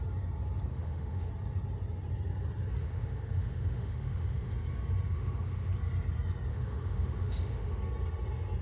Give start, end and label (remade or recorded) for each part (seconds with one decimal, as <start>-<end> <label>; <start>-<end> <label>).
0.0-0.7 recorded; 0.7-1.3 remade; 1.3-2.8 recorded; 2.8-4.5 remade; 4.5-5.1 recorded; 5.1-5.7 remade; 5.7-6.5 recorded; 6.5-7.8 remade; 7.8-8.6 recorded